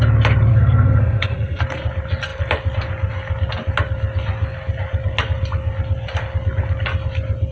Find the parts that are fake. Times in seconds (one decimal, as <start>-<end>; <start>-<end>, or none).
0.5-1.6